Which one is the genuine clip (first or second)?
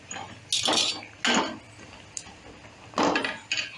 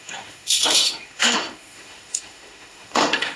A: first